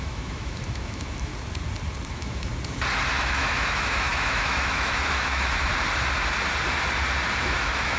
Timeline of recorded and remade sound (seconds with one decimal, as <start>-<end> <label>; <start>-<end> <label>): 0.0-1.3 remade; 1.3-2.1 recorded; 2.1-2.5 remade; 2.5-3.1 recorded; 3.1-5.7 remade; 5.7-7.4 recorded; 7.4-8.0 remade